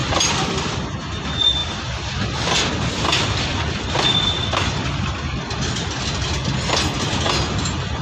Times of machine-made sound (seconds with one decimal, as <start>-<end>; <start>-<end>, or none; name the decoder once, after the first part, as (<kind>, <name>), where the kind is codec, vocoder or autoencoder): 0.0-0.8 (vocoder, BigVGAN v2)